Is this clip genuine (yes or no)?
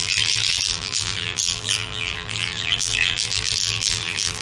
no